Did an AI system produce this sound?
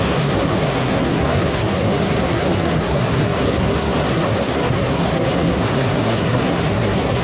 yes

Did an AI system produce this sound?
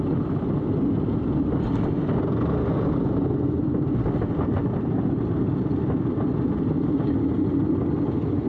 no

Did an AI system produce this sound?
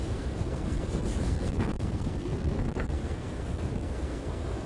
yes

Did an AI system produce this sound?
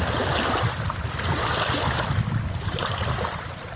no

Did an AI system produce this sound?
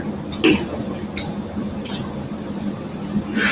no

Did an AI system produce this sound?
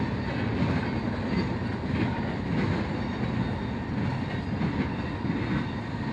no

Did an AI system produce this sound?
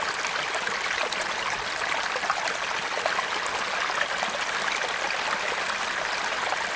no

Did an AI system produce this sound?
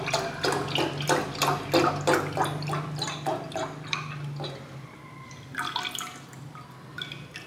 no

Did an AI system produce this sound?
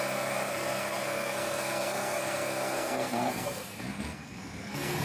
yes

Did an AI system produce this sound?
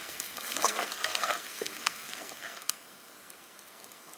yes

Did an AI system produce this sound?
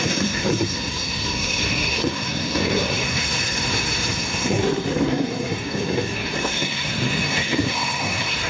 yes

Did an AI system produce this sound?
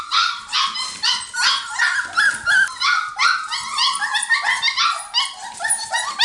no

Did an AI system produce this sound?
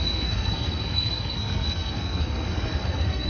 yes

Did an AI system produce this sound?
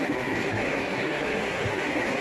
yes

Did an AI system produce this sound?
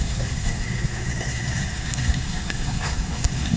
yes